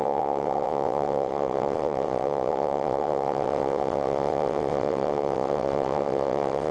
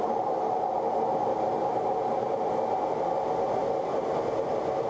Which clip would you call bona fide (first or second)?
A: second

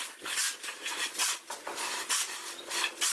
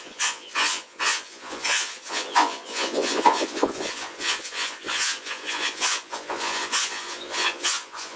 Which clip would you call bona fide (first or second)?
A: first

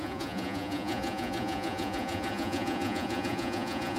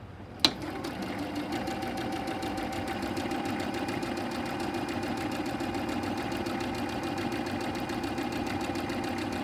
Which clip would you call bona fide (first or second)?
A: second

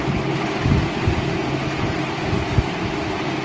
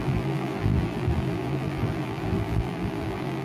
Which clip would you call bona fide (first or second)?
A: first